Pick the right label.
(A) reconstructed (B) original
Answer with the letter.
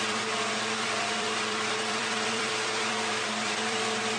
A